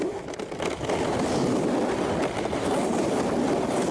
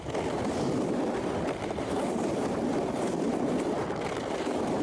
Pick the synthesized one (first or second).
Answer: second